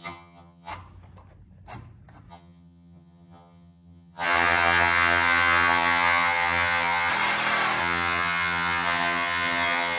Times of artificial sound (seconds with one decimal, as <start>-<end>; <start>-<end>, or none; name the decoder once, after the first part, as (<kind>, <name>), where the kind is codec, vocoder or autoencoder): 0.0-0.7 (vocoder, HiFi-GAN); 2.3-7.1; 7.8-10.0